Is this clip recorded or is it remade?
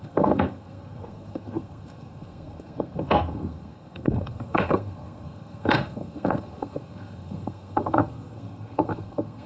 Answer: remade